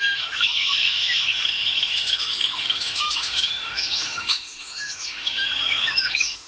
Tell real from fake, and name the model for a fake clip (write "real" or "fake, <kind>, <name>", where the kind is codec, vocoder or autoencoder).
fake, autoencoder, DAC-VAE